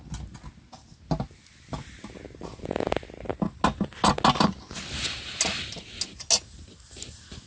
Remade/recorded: recorded